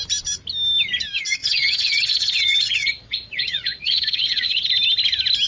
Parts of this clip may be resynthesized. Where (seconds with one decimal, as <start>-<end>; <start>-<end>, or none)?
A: 1.4-4.7